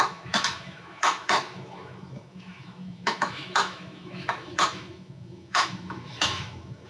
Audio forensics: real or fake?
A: fake